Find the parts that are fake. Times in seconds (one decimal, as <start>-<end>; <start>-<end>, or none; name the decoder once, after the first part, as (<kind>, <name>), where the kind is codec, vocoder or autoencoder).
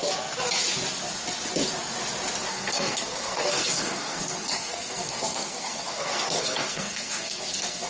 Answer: 2.5-7.9 (codec, SNAC)